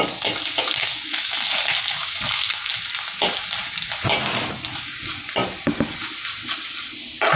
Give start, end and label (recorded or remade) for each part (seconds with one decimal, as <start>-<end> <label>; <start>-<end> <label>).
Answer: 0.0-0.8 recorded; 0.8-2.8 remade; 2.8-7.4 recorded